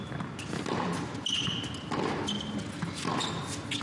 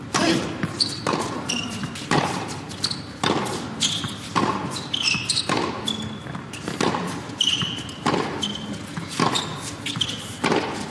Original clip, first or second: first